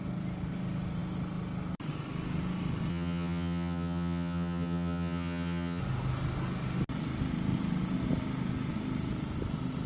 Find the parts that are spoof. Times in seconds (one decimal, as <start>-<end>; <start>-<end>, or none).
2.9-5.8